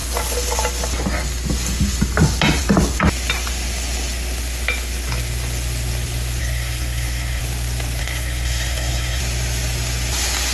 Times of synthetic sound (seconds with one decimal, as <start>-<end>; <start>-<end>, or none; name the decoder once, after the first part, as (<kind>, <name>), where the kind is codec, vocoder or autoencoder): 6.4-7.4 (codec, SNAC); 8.0-9.2